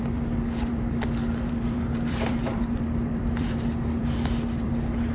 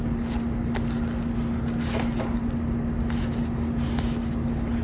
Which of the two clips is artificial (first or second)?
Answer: first